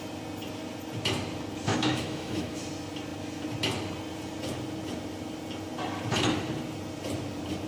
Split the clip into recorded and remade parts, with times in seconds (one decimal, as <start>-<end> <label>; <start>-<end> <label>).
0.0-1.7 recorded; 1.7-2.6 remade; 2.6-7.7 recorded